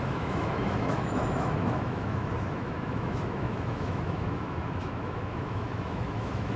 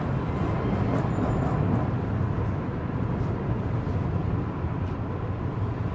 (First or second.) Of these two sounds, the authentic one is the second